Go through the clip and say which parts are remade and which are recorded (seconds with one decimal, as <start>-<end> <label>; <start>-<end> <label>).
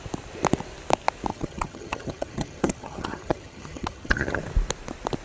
0.0-1.3 recorded; 1.3-4.4 remade; 4.4-5.2 recorded